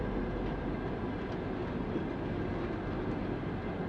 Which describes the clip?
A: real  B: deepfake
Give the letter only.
A